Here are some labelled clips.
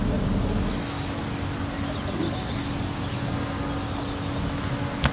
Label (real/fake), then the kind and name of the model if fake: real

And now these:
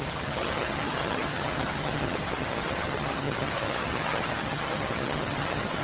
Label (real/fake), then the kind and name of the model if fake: fake, vocoder, HiFi-GAN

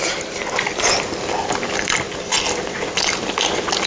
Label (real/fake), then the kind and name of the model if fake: real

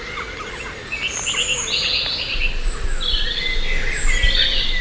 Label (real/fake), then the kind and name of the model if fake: real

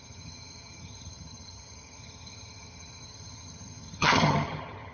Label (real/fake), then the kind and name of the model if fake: fake, vocoder, HiFi-GAN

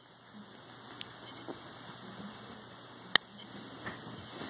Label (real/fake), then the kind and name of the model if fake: real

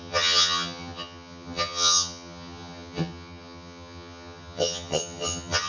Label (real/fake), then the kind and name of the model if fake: fake, vocoder, HiFi-GAN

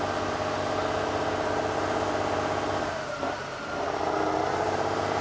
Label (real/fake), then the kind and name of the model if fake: real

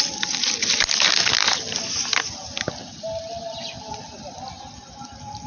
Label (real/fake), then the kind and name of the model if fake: real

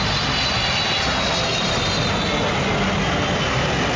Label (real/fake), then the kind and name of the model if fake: real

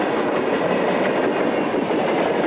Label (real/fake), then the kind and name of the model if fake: real